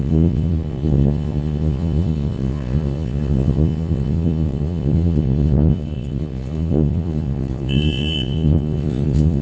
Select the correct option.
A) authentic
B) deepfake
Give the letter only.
B